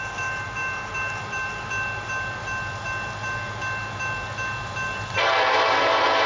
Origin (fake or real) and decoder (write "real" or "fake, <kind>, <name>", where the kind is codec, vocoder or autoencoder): real